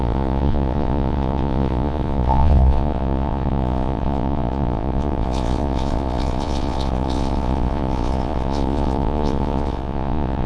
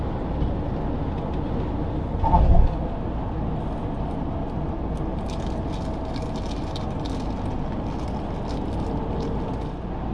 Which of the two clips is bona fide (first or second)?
second